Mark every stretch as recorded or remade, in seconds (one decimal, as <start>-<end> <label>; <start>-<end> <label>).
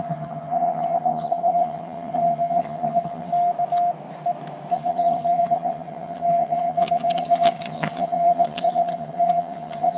0.0-3.3 remade; 3.3-4.7 recorded; 4.7-10.0 remade